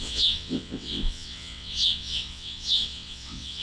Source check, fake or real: fake